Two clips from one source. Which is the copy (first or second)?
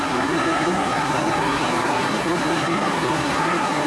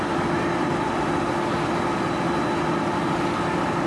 first